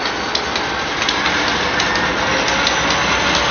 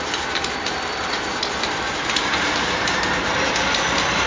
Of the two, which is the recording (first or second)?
first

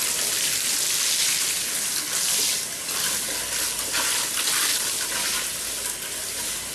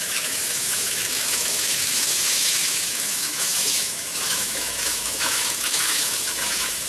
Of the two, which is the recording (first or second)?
first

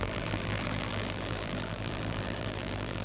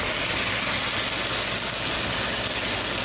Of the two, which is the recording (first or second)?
second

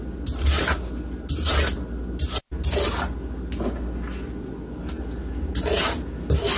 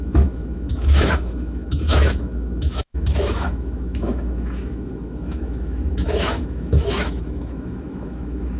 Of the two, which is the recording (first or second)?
first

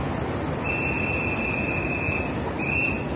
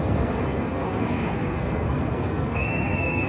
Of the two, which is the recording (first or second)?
first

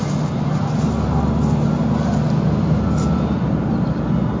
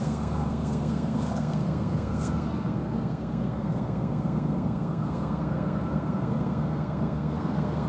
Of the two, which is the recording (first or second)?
first